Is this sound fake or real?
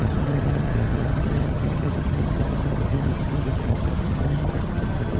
fake